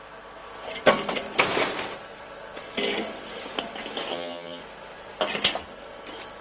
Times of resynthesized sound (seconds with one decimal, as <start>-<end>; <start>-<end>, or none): 4.1-4.6